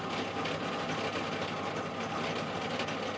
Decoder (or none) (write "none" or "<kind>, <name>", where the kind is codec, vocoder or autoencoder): none